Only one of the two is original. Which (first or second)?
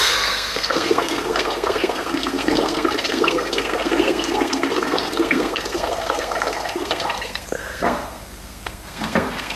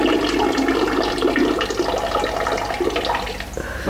second